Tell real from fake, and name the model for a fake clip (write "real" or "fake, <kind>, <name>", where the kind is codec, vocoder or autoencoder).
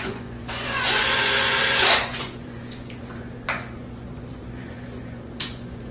fake, vocoder, Vocos